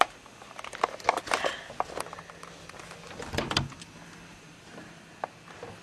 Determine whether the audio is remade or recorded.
recorded